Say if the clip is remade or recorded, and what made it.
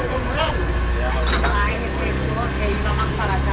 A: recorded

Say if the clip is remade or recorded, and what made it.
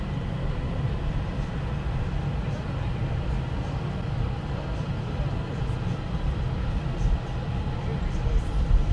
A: recorded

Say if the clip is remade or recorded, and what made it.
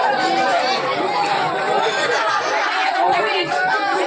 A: recorded